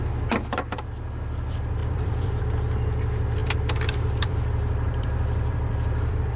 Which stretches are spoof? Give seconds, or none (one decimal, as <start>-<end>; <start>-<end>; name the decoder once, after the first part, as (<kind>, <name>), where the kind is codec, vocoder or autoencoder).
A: 1.8-2.4 (vocoder, BigVGAN v2); 3.4-6.4